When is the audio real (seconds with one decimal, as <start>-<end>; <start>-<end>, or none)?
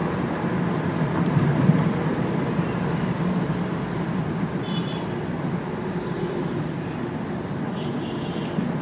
3.8-8.8